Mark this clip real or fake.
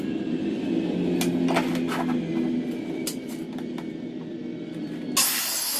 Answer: real